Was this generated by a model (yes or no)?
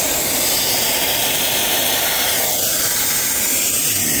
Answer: no